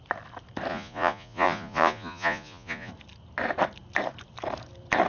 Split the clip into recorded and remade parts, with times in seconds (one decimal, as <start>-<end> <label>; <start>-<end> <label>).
0.0-0.7 recorded; 0.7-2.9 remade; 2.9-5.1 recorded